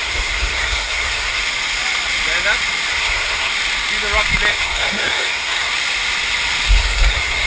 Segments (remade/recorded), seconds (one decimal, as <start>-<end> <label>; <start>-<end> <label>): 0.0-1.4 remade; 1.4-2.9 recorded; 2.9-3.5 remade; 3.5-4.5 recorded; 4.5-5.7 remade; 5.7-6.7 recorded; 6.7-7.5 remade